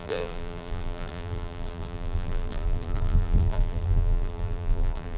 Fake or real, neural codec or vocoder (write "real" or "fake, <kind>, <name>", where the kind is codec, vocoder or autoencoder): fake, vocoder, BigVGAN v2